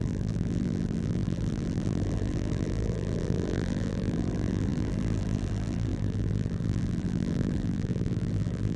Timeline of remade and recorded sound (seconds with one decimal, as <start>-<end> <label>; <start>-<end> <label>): 0.0-8.8 remade